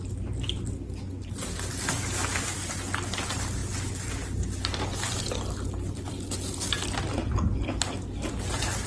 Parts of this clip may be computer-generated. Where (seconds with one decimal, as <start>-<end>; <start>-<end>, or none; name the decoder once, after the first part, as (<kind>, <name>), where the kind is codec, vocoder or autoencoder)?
none

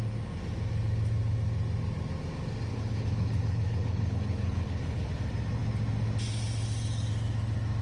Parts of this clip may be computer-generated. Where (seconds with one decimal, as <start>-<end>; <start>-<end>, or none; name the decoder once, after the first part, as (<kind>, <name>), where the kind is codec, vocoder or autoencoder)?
2.7-5.1 (codec, HILCodec)

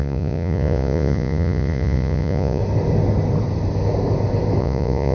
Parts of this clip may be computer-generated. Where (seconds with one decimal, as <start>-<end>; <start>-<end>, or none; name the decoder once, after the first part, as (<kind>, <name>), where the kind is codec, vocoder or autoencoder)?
0.0-2.6 (vocoder, Vocos); 4.6-5.1